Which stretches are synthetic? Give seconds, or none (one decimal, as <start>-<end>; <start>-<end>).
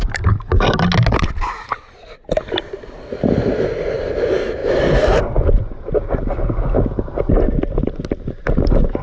none